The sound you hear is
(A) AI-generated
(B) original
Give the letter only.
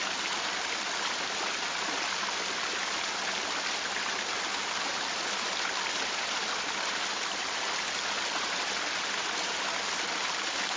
B